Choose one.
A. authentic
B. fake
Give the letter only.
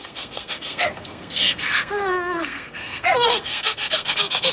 B